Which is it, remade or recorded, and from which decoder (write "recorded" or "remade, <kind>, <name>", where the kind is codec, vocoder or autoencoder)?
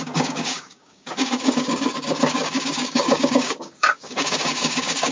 remade, codec, DAC